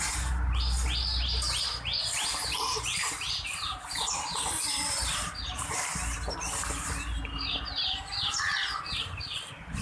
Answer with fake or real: real